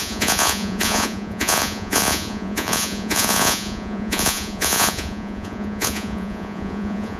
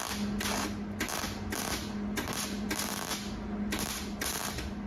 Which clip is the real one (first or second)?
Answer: second